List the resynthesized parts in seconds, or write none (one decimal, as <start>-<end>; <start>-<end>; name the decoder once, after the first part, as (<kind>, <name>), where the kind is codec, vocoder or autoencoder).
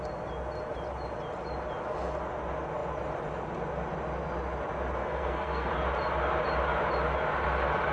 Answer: 5.0-5.7 (codec, SNAC)